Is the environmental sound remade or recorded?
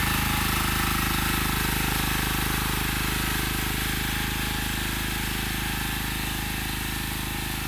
recorded